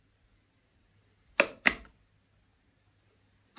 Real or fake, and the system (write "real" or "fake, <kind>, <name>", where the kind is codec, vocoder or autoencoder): real